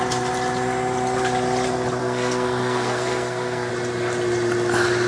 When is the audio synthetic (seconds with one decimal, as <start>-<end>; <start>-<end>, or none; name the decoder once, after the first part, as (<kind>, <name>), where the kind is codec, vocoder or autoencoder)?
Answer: 2.0-3.7 (codec, SNAC)